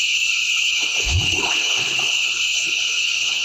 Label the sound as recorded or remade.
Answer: remade